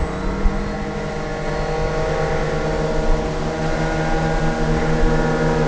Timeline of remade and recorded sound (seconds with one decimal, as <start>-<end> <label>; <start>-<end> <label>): 0.0-5.7 recorded